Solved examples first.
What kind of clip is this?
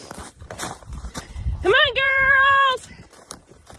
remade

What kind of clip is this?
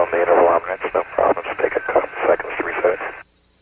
remade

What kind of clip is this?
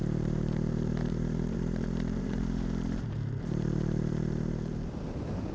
remade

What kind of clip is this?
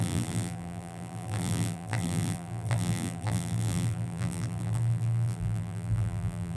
remade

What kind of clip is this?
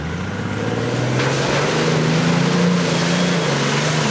recorded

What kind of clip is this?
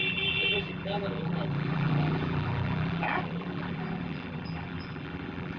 remade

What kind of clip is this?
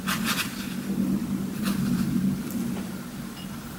recorded